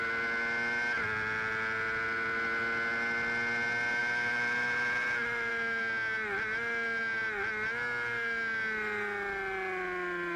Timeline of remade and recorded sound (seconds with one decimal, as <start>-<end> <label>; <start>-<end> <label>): 0.0-4.0 recorded; 4.0-5.5 remade; 5.5-10.4 recorded